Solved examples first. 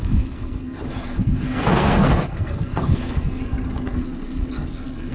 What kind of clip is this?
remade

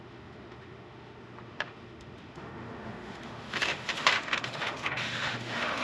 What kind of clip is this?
remade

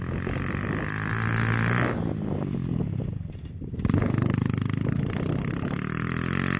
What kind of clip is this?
recorded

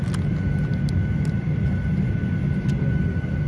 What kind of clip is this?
recorded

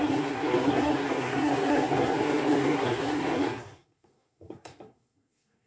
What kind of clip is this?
remade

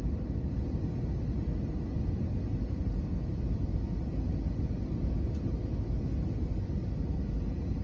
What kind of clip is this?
recorded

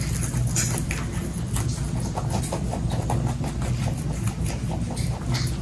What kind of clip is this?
recorded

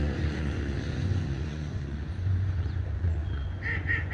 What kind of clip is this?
remade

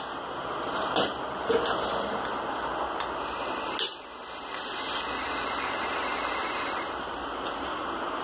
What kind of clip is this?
recorded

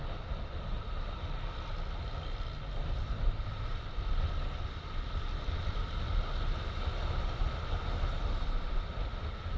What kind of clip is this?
recorded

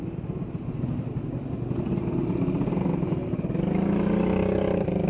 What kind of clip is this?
recorded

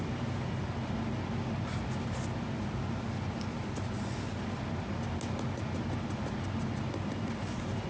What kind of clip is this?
recorded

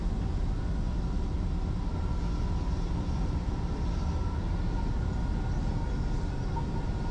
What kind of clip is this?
recorded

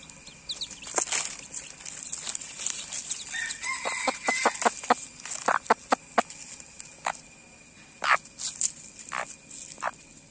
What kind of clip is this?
recorded